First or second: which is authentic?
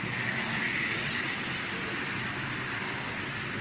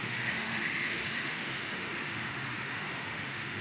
first